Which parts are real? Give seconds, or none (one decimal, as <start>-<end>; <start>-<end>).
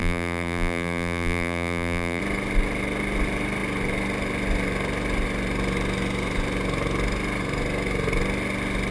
2.2-8.9